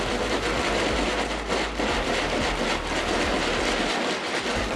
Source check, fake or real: real